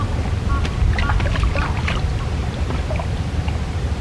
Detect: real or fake real